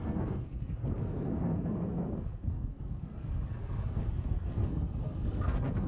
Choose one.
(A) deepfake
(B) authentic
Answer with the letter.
A